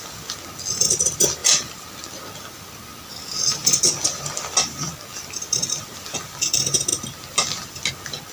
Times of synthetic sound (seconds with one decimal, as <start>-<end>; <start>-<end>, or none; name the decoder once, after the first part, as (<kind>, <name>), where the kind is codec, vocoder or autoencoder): none